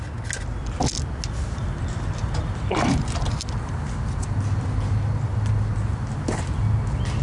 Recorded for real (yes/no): yes